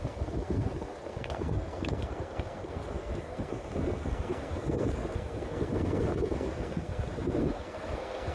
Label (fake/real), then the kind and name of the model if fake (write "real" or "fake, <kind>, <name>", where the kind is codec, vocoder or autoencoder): fake, codec, SNAC